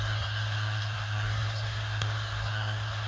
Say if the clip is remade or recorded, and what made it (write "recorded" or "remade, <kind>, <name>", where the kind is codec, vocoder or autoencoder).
remade, codec, SNAC